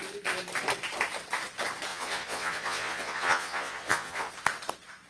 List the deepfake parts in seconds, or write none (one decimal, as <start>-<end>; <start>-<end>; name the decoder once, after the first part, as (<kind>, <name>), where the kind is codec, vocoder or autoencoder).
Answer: 1.9-4.3 (vocoder, Vocos)